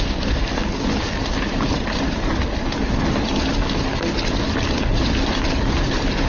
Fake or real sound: real